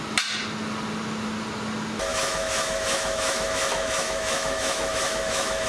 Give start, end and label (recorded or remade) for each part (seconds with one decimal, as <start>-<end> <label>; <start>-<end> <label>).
0.0-2.1 recorded; 2.1-5.7 remade